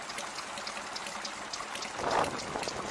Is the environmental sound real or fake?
real